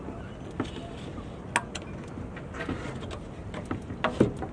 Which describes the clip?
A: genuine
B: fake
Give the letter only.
A